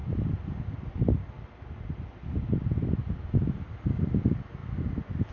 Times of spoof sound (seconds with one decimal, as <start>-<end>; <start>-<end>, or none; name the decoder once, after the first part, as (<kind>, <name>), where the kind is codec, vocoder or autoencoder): none